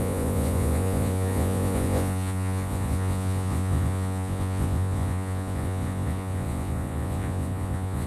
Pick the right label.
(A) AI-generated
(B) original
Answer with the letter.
A